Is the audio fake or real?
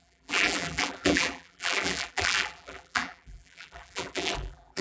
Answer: fake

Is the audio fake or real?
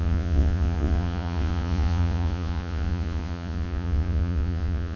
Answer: fake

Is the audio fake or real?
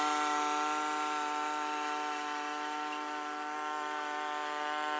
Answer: real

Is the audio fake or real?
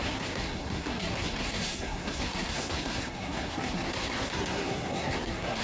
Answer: fake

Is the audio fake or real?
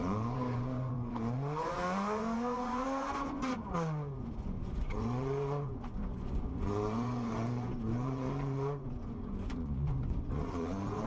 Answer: fake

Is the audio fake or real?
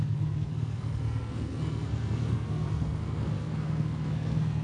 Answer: fake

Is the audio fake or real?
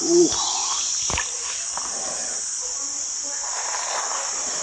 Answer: real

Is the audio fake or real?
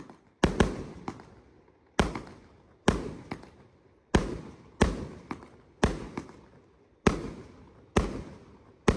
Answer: real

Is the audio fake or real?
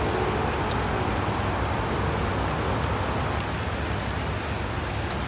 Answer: real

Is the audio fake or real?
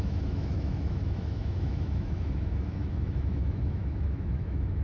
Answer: fake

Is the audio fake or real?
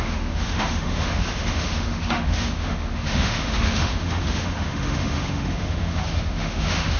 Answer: fake